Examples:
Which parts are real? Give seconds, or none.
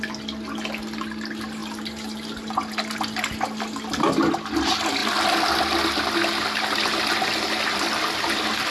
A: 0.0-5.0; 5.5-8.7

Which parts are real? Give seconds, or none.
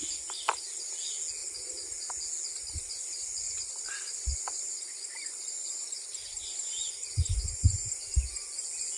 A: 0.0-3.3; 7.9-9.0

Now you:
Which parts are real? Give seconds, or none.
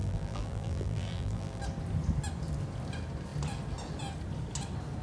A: 1.6-5.0